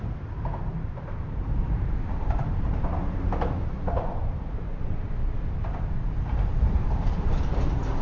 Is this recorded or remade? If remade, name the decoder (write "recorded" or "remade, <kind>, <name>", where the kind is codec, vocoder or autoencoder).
remade, vocoder, BigVGAN v2